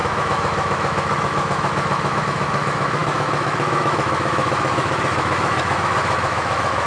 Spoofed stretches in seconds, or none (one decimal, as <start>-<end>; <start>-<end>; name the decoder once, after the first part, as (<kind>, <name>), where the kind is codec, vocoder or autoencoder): 0.0-6.9 (autoencoder, DAC-VAE)